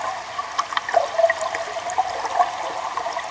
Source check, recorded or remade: recorded